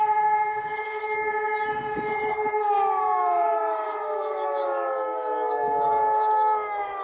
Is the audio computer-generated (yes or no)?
yes